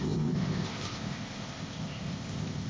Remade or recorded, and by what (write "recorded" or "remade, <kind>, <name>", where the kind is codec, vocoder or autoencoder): remade, codec, ZipCodec